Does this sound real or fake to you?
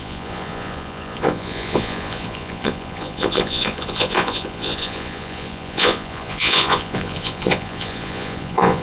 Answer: fake